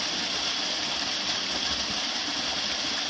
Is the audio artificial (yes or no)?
no